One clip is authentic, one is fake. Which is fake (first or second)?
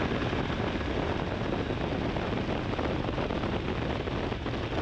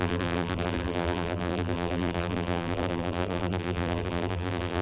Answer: second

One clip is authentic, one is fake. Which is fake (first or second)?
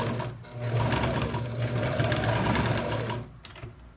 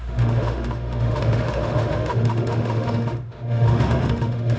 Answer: second